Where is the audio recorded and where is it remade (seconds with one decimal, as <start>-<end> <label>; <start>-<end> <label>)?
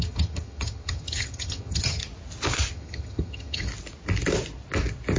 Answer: 0.0-2.0 remade; 2.0-2.7 recorded; 2.7-3.7 remade; 3.7-5.2 recorded